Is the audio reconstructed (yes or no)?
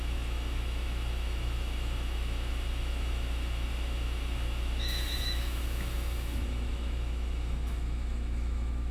yes